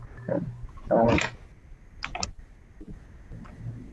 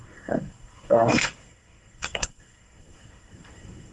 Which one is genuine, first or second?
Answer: first